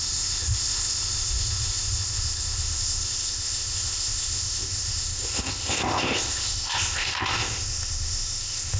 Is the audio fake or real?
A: fake